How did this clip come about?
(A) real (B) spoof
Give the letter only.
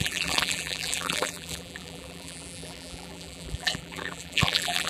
B